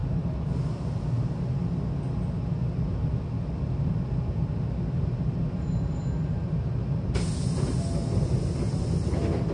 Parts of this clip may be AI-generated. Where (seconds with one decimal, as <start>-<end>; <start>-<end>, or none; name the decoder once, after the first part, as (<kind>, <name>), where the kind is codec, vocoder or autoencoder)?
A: none